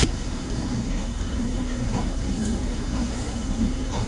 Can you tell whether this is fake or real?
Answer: fake